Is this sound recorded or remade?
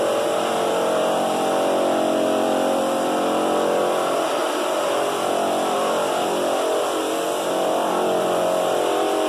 remade